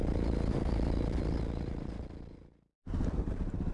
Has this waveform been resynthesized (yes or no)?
no